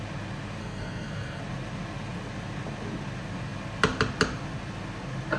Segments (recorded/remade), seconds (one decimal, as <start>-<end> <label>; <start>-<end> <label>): 0.0-0.6 recorded; 0.6-1.4 remade; 1.4-5.4 recorded